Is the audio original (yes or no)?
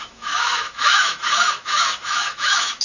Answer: no